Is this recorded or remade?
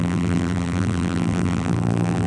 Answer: remade